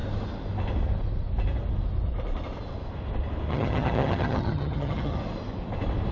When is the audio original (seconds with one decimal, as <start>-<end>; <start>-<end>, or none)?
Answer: 0.0-3.5; 5.2-6.1